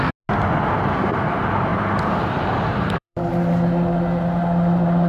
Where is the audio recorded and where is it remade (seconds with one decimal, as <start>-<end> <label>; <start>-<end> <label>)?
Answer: 0.0-1.7 recorded; 1.7-5.1 remade